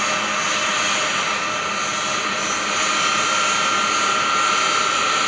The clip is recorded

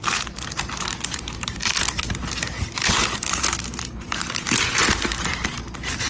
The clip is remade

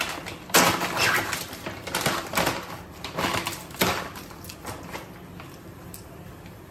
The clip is remade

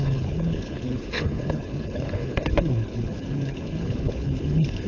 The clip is remade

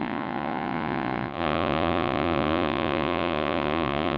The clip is remade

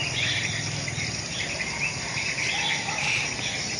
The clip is recorded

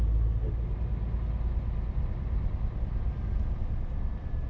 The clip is recorded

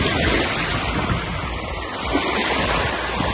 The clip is recorded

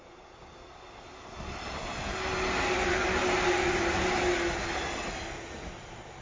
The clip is recorded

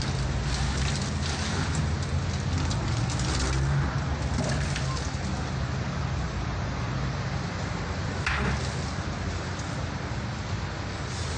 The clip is recorded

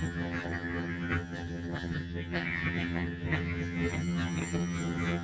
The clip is remade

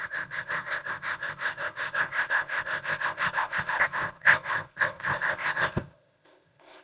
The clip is remade